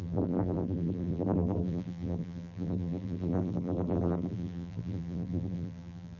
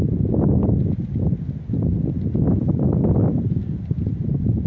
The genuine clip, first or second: second